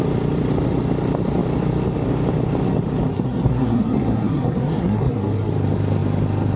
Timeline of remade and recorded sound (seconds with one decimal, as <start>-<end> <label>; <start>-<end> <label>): 0.0-3.1 recorded; 3.1-5.5 remade; 5.5-6.6 recorded